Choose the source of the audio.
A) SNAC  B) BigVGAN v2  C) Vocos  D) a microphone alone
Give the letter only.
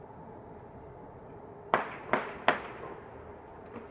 D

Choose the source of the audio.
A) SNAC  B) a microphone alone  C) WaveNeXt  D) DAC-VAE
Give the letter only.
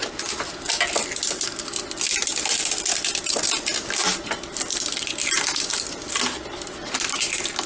B